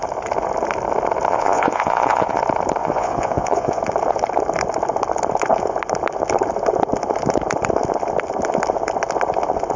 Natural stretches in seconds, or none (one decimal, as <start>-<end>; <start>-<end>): 0.0-1.3; 2.4-2.8; 3.8-9.8